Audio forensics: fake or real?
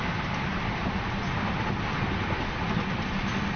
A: real